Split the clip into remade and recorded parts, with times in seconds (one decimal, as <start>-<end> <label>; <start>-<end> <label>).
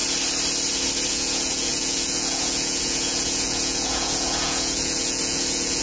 0.0-1.1 recorded; 1.1-5.8 remade